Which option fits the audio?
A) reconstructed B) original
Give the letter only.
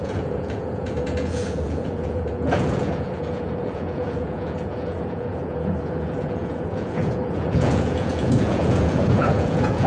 A